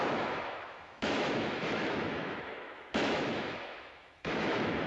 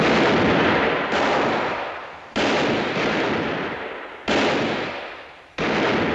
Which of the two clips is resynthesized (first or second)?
first